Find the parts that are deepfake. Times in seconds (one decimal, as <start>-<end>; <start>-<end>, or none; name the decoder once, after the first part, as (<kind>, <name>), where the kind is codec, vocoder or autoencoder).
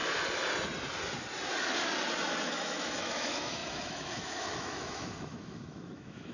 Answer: 2.5-6.3 (autoencoder, DAC-VAE)